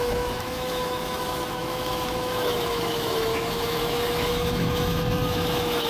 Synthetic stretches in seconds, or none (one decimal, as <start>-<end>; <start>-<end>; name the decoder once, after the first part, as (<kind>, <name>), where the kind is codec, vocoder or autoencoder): 0.0-5.9 (autoencoder, DAC-VAE)